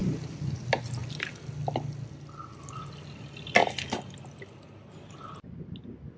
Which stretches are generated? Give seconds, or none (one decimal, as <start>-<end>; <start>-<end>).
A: none